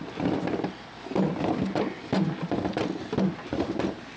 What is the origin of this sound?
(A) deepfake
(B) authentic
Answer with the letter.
B